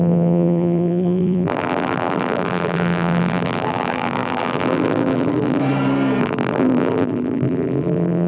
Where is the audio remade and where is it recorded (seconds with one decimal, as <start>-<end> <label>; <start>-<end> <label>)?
0.0-5.6 remade; 5.6-6.2 recorded; 6.2-8.3 remade